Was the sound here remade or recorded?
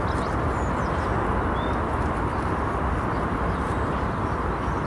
recorded